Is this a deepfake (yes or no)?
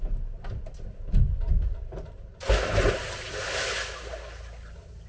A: no